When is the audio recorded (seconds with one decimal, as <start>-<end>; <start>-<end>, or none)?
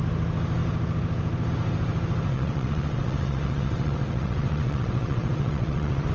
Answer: 0.0-2.3